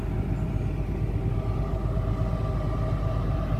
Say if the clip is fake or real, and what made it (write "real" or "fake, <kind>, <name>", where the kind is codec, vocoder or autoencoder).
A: real